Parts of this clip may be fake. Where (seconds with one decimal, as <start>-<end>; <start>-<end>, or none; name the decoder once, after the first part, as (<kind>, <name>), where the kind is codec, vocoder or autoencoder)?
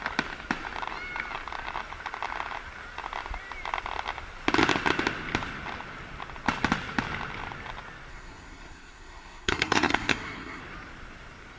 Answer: 8.1-10.6 (codec, SNAC)